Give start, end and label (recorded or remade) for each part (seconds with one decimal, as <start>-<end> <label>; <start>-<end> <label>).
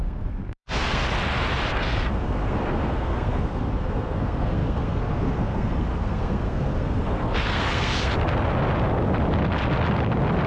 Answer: 0.0-1.0 remade; 1.0-1.7 recorded; 1.7-8.1 remade; 8.1-10.5 recorded